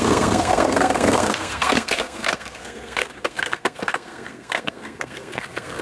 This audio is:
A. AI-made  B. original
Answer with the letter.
A